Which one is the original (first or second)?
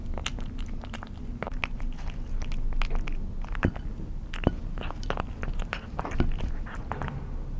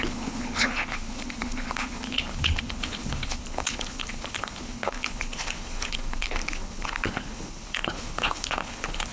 first